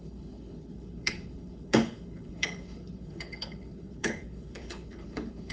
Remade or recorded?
remade